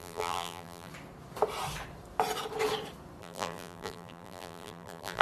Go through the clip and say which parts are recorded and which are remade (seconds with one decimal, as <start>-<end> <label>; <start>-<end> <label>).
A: 0.0-0.9 remade; 0.9-3.2 recorded; 3.2-5.2 remade